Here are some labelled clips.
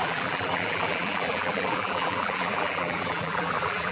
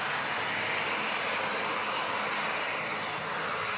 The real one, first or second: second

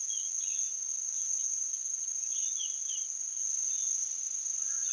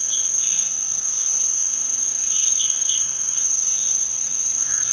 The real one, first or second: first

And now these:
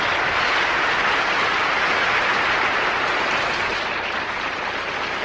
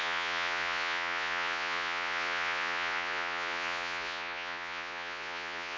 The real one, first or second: first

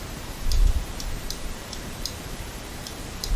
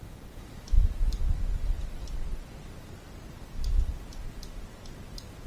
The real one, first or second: second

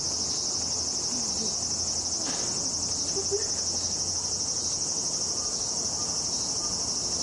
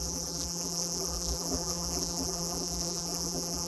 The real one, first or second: first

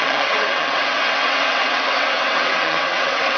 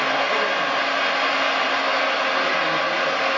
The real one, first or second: second